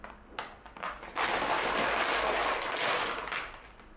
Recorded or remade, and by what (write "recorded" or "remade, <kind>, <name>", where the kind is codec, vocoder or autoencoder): recorded